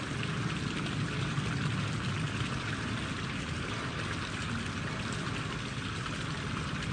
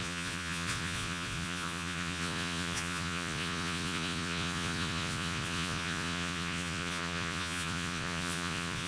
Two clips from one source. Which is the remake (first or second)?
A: second